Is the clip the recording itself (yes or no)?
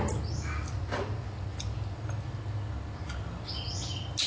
yes